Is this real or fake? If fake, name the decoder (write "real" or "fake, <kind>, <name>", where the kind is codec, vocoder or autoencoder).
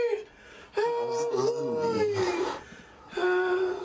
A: real